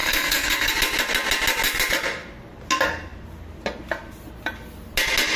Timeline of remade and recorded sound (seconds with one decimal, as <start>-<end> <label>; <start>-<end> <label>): 0.0-0.7 remade; 0.7-5.4 recorded